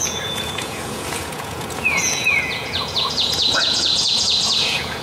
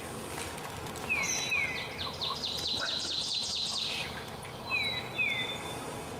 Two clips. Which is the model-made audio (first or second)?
first